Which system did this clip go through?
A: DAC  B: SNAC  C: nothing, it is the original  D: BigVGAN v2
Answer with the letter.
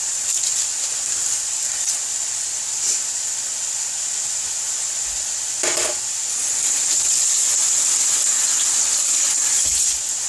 C